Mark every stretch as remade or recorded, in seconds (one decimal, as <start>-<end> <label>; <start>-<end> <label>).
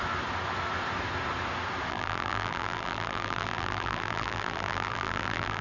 0.0-1.9 recorded; 1.9-5.6 remade